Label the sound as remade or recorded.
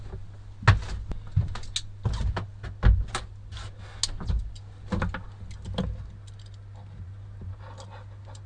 recorded